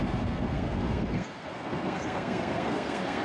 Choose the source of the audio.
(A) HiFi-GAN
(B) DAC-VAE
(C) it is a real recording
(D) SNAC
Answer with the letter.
D